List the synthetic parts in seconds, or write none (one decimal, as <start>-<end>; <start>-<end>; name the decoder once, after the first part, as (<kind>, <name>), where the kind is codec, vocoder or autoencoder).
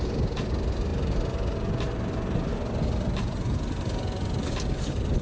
none